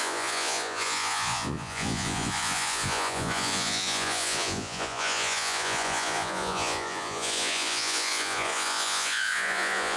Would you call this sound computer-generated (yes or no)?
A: yes